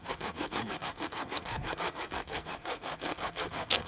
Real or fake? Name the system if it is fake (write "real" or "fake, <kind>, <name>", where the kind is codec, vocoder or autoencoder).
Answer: fake, codec, SNAC